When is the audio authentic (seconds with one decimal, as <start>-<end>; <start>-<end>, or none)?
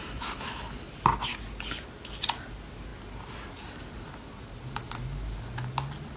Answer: 0.0-6.2